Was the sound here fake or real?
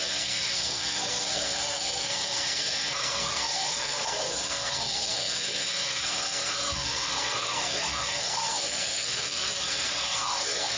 fake